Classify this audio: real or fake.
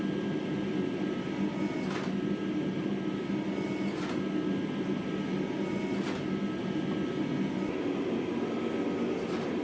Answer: real